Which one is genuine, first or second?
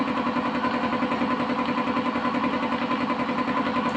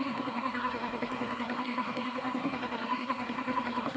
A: first